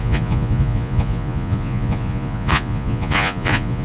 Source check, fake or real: fake